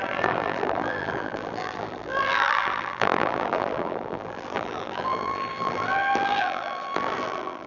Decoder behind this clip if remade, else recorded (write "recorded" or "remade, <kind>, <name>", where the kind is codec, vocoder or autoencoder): remade, vocoder, BigVGAN v2